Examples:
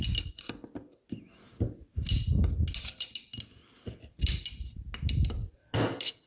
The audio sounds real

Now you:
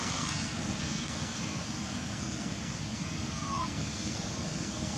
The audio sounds fake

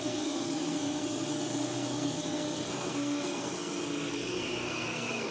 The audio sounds fake